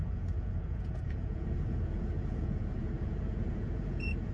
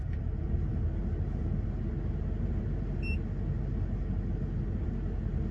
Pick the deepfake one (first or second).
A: first